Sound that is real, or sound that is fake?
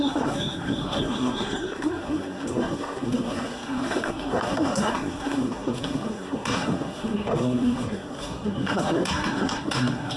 fake